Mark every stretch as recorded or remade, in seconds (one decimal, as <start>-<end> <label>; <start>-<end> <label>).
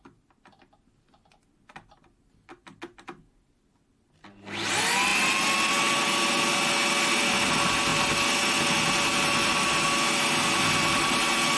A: 0.0-11.6 recorded